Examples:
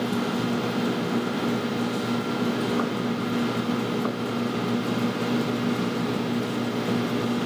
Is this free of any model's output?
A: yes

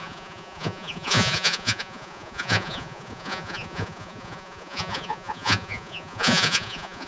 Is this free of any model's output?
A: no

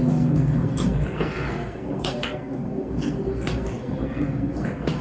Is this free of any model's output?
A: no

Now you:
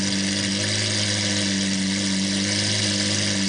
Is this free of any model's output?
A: yes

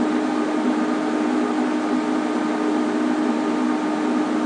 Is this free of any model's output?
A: yes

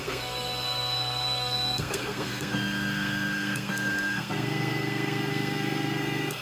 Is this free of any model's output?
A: no